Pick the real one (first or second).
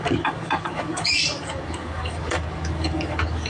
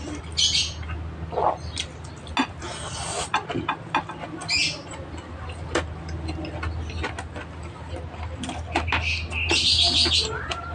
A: second